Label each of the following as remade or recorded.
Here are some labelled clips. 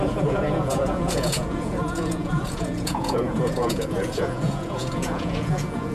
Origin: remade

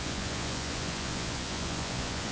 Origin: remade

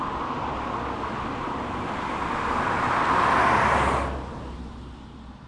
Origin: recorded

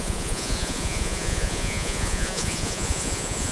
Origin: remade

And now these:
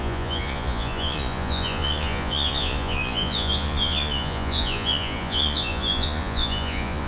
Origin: remade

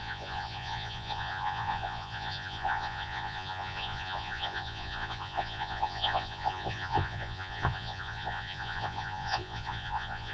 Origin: remade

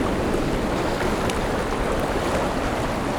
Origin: recorded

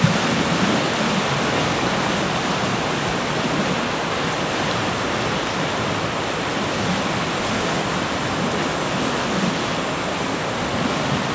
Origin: recorded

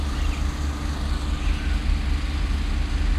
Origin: recorded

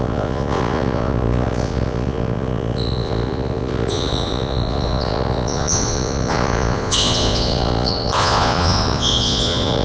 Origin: remade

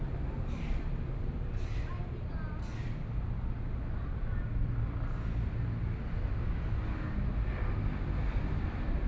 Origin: recorded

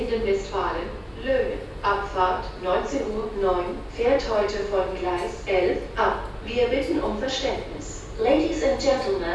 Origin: recorded